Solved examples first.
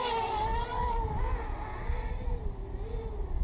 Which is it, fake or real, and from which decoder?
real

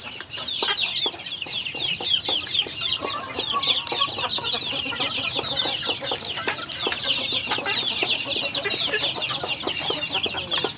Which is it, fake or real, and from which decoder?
real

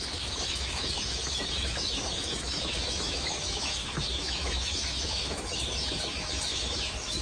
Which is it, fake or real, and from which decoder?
fake, autoencoder, DAC-VAE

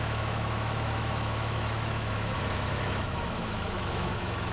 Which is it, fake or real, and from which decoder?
fake, autoencoder, DAC-VAE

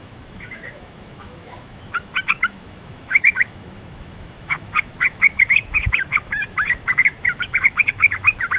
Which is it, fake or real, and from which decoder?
fake, autoencoder, DAC-VAE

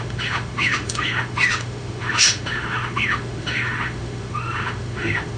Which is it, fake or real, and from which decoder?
fake, autoencoder, DAC-VAE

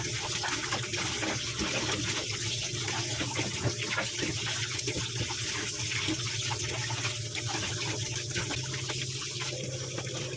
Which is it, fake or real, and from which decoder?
real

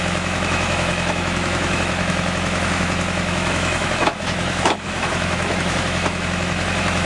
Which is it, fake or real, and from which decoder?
fake, autoencoder, DAC-VAE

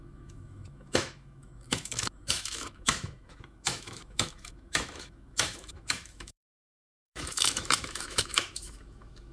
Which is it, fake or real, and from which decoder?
fake, autoencoder, DAC-VAE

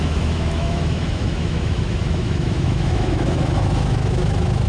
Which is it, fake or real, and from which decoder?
fake, autoencoder, DAC-VAE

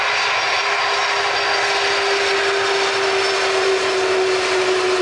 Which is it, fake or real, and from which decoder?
real